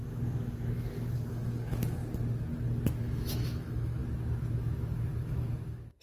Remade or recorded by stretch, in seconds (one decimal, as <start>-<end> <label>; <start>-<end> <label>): 0.0-2.0 remade; 2.0-3.0 recorded; 3.0-4.0 remade; 4.0-4.6 recorded; 4.6-6.0 remade